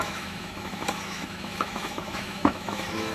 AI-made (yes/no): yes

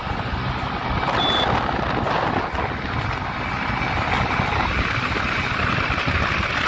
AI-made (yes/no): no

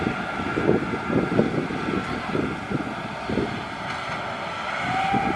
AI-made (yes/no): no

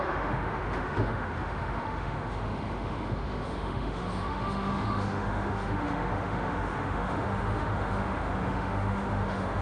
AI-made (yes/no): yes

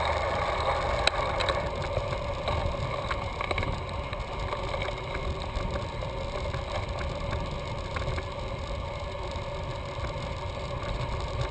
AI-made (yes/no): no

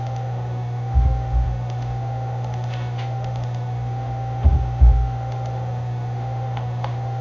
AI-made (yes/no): yes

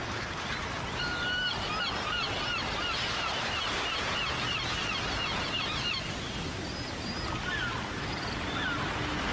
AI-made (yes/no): no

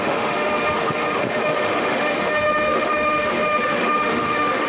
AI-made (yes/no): yes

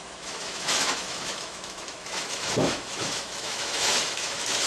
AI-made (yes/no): yes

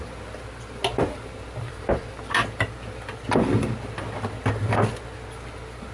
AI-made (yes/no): no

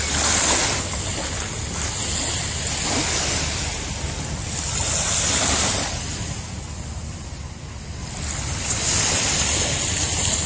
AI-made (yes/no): no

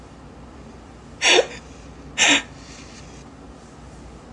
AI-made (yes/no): no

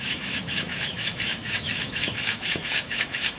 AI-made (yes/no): yes